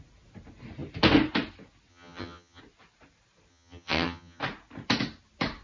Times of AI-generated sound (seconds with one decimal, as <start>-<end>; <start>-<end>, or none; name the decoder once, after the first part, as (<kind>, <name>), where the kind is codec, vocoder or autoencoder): 1.9-2.6 (vocoder, HiFi-GAN); 3.5-4.4